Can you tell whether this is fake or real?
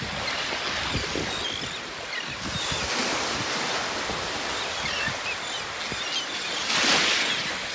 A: real